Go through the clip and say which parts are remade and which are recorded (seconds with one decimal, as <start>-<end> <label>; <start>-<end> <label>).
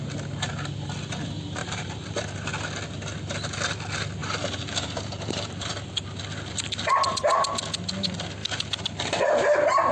0.0-1.6 recorded; 1.6-2.2 remade; 2.2-4.2 recorded; 4.2-6.2 remade; 6.2-9.9 recorded